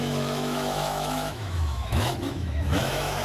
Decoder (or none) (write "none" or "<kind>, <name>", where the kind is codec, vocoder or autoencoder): autoencoder, DAC-VAE